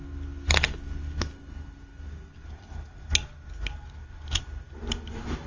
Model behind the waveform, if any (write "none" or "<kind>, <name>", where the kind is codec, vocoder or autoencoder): none